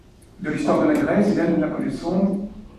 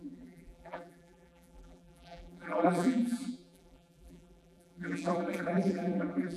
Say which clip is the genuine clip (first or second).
first